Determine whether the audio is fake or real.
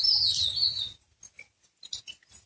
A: real